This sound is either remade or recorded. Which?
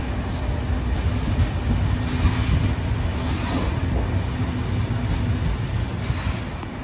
recorded